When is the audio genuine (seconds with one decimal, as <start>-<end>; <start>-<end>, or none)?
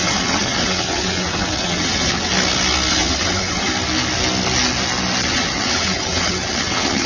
2.3-2.9; 3.7-5.3